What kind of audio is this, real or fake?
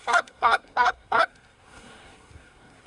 fake